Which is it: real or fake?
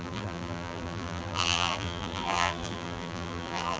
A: fake